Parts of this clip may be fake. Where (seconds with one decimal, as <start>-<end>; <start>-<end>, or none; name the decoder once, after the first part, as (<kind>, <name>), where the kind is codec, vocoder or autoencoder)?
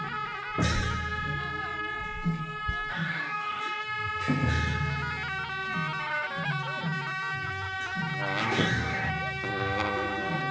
2.9-3.6 (codec, DAC); 8.4-9.1